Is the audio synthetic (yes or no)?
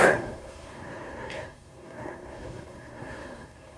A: yes